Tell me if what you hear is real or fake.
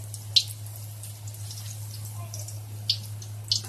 real